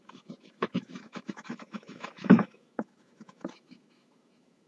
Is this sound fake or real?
fake